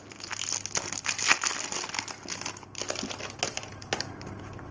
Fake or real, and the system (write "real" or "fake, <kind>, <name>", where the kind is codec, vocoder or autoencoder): real